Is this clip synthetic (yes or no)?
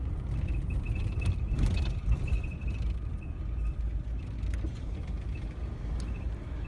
no